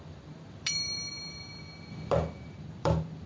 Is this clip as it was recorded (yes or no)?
no